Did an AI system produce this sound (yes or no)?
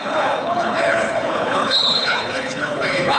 yes